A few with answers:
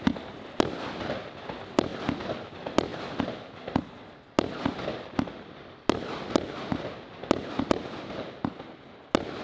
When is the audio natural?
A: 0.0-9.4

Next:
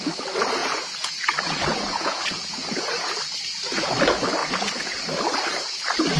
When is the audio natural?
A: 0.0-0.6; 3.1-6.2